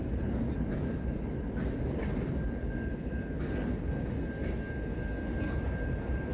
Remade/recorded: recorded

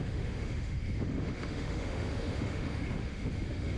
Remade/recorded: remade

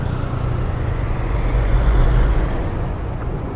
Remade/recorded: remade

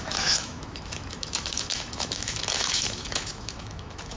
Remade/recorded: remade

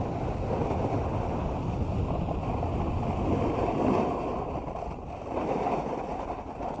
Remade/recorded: recorded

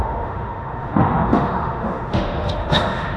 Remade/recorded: remade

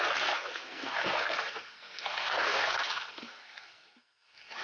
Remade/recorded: remade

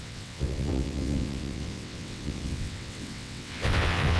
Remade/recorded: remade